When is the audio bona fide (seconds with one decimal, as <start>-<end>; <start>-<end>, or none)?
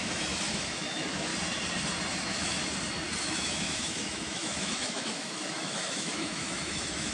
1.3-2.2; 2.6-3.2